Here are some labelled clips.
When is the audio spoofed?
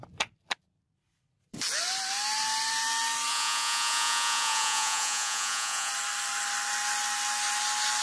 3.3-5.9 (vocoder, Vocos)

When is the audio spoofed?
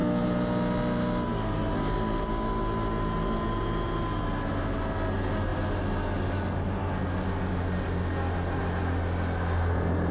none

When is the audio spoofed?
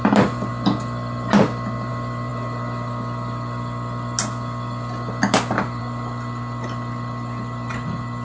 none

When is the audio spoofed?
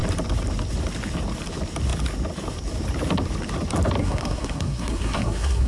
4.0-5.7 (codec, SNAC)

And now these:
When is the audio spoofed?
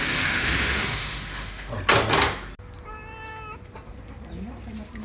0.0-1.7 (autoencoder, DAC-VAE)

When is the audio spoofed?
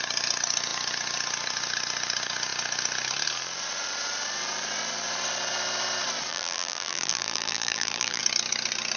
6.3-8.2 (vocoder, BigVGAN v2)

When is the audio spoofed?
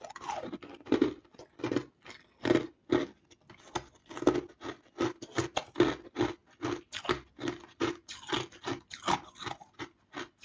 none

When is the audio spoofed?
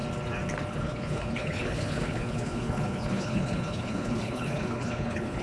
0.7-5.4 (codec, HILCodec)